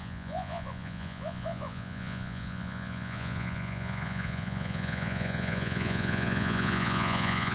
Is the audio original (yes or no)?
no